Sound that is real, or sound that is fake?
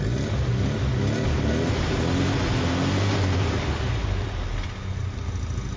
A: real